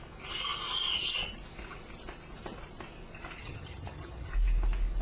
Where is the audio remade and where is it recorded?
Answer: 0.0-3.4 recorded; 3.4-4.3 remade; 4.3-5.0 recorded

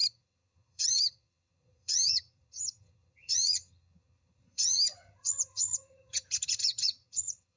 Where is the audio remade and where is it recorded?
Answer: 0.0-7.6 remade

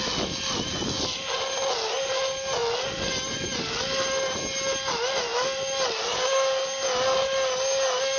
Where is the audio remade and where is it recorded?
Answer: 0.0-8.2 recorded

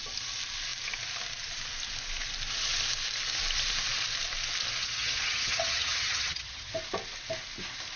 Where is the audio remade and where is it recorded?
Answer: 0.0-4.8 recorded; 4.8-6.7 remade; 6.7-8.0 recorded